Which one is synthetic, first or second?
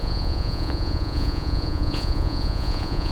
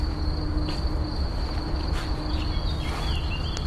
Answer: first